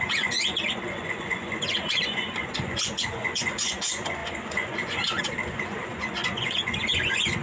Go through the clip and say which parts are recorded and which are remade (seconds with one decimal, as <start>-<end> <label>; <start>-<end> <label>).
0.0-7.4 remade